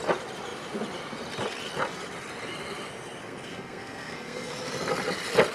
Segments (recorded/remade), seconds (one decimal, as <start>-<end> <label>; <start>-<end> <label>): 0.0-3.2 recorded; 3.2-4.5 remade; 4.5-5.5 recorded